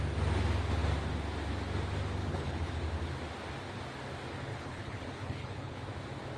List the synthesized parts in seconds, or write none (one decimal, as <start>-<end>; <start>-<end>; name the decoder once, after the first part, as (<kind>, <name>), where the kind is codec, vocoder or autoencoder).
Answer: 2.2-2.7 (codec, HILCodec); 4.5-5.8